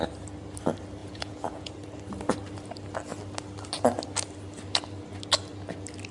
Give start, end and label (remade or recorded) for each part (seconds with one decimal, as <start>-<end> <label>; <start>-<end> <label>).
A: 0.0-1.0 recorded; 1.0-1.7 remade; 1.7-6.1 recorded